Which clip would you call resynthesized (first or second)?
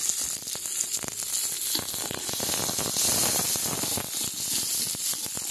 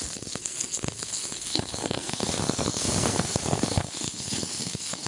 second